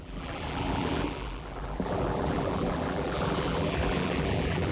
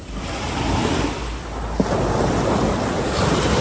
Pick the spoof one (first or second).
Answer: first